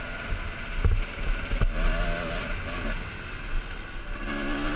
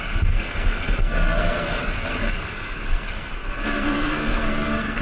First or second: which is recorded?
first